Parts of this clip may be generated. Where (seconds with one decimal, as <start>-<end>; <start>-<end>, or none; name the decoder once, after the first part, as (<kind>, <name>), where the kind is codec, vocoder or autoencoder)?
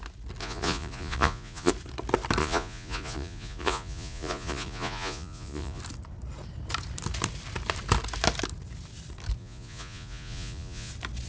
0.4-1.7 (vocoder, Vocos); 2.4-5.8; 9.4-10.9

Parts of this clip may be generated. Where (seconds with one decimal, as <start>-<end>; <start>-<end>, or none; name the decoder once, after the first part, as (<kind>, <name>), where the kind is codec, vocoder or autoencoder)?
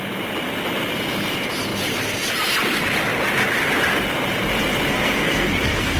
4.9-6.0 (codec, SNAC)